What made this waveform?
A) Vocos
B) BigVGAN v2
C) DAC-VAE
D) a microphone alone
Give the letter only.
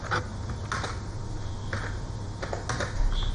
D